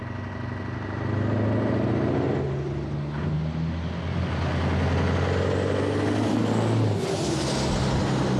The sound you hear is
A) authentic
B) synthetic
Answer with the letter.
A